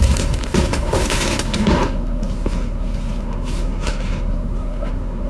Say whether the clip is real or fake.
fake